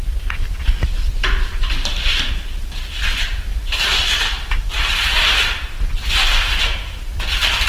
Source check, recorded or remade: recorded